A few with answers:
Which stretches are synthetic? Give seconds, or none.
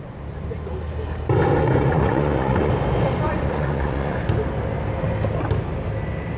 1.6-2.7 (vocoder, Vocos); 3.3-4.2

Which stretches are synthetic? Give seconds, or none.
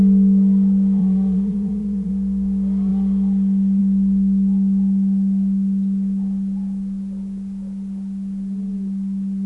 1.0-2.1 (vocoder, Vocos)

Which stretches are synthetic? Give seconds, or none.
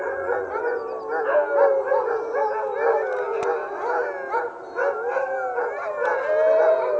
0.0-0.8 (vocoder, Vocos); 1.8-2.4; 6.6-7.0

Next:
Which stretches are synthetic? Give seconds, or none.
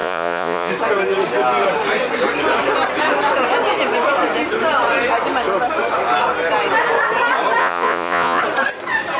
0.0-0.7 (vocoder, Vocos); 7.6-8.4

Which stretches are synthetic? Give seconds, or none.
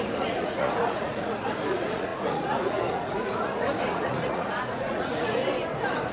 0.0-5.4 (vocoder, Vocos)